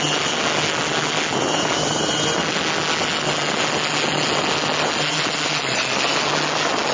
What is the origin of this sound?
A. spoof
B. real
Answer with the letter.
B